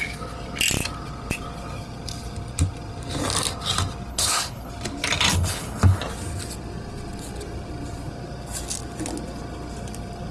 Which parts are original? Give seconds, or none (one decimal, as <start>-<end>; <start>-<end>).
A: 0.0-4.1; 4.7-5.3; 6.0-10.3